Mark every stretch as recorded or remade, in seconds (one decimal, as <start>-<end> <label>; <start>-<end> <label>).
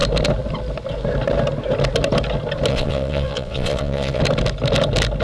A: 0.0-2.7 recorded; 2.7-4.2 remade; 4.2-5.2 recorded